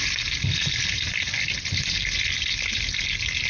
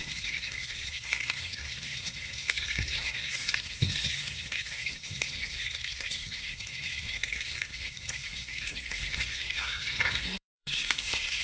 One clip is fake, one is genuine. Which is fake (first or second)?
second